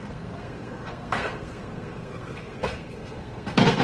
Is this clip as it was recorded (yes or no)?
no